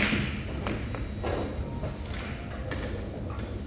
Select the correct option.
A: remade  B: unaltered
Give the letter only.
B